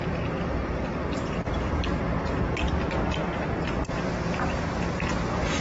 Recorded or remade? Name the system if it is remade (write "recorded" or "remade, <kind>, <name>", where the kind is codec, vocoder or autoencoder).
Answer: recorded